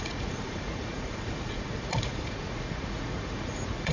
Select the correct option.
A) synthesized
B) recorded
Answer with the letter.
A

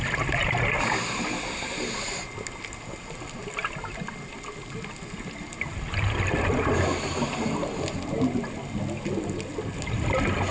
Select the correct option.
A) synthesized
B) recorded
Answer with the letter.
B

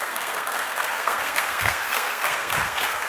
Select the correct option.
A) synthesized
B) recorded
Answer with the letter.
A